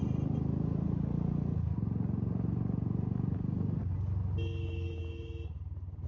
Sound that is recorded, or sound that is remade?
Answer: recorded